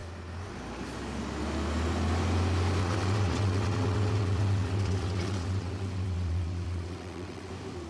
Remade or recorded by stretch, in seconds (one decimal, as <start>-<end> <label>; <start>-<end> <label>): 0.0-2.8 recorded; 2.8-7.5 remade; 7.5-7.9 recorded